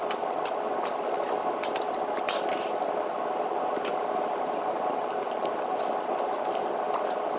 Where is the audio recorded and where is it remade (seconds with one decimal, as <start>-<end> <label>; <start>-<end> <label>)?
0.0-3.9 recorded; 3.9-5.8 remade; 5.8-7.4 recorded